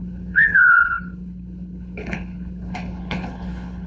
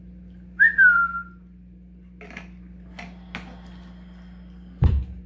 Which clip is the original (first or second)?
second